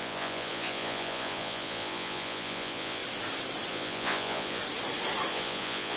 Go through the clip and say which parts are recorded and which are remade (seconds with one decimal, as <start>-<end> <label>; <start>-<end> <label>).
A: 0.0-3.0 remade; 3.0-3.7 recorded; 3.7-4.6 remade; 4.6-5.3 recorded; 5.3-6.0 remade